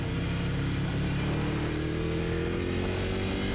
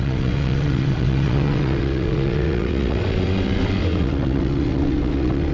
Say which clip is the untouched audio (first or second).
first